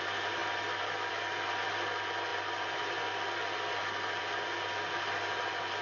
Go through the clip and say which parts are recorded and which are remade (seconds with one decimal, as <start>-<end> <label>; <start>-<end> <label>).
0.0-5.8 recorded